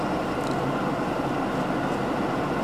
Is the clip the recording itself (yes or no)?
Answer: yes